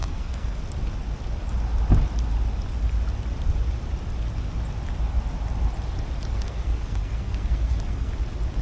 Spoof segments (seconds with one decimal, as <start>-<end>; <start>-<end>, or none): 0.0-0.6; 6.3-8.1